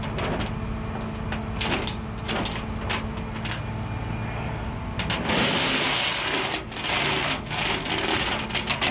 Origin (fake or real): real